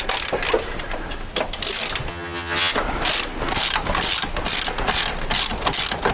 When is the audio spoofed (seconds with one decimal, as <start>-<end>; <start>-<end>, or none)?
2.1-2.7